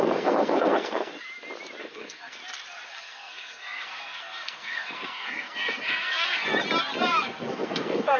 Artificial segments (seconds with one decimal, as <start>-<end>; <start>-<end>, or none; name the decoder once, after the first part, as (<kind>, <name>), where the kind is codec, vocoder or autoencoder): 0.0-1.1 (codec, SNAC); 1.8-2.4; 2.9-6.5; 7.0-8.2